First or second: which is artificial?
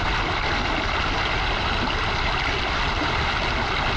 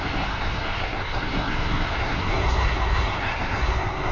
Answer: second